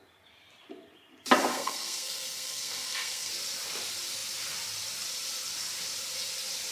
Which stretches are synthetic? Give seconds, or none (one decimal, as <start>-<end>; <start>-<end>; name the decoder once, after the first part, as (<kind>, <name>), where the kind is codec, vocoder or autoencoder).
1.5-3.3 (codec, SNAC)